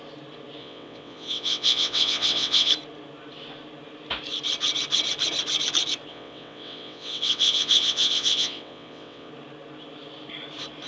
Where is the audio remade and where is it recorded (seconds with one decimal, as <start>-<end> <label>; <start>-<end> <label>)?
0.0-0.6 recorded; 0.6-2.7 remade; 2.7-6.1 recorded; 6.1-9.3 remade; 9.3-10.9 recorded